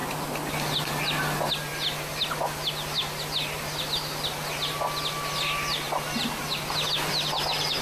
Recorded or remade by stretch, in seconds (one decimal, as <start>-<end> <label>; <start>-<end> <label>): 0.0-7.8 recorded